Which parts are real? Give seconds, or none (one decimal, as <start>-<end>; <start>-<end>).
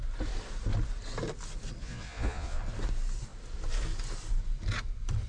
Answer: 0.0-1.8; 2.6-5.3